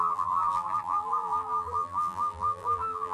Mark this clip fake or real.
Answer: fake